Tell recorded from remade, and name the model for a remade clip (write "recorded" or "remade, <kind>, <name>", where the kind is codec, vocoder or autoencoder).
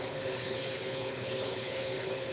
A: remade, codec, HILCodec